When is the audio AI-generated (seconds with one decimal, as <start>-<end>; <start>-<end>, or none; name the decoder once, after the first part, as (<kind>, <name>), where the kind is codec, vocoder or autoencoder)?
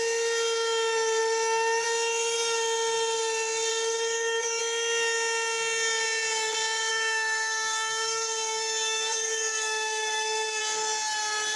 3.7-4.6 (codec, DAC); 6.9-10.6